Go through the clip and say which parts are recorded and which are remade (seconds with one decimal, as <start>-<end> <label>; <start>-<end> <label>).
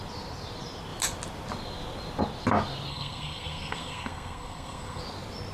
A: 0.0-2.9 recorded; 2.9-5.0 remade; 5.0-5.5 recorded